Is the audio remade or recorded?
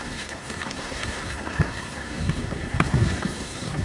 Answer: remade